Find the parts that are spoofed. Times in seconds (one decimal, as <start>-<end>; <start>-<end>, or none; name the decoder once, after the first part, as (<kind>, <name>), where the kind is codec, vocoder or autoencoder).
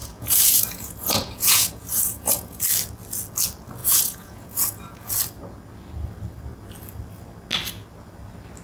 0.0-2.6 (vocoder, Vocos); 3.8-5.1